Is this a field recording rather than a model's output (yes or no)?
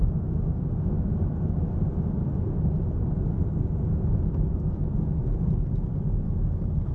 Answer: yes